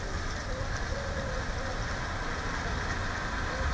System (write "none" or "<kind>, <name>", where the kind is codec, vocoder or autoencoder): none